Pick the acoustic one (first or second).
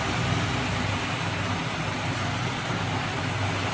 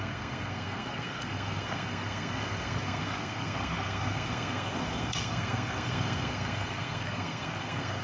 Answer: first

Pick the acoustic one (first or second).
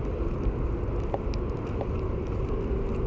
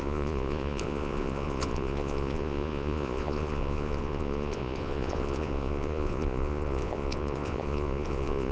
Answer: first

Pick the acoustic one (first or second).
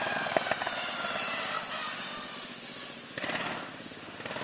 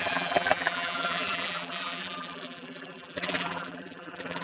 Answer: first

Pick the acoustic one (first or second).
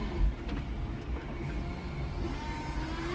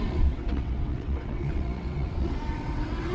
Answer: first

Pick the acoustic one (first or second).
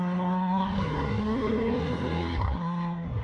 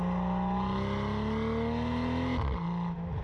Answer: second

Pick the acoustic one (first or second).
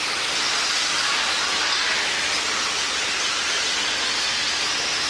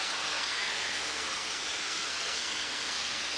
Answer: first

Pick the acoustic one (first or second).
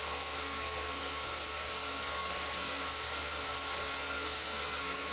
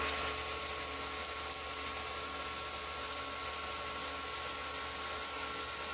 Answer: second